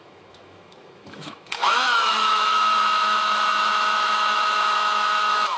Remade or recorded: remade